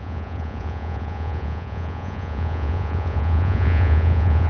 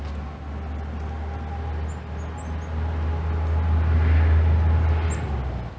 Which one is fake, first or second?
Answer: first